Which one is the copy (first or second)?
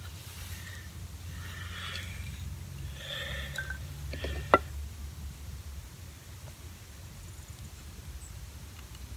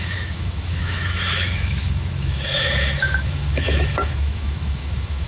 second